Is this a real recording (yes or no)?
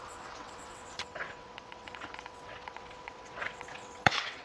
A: no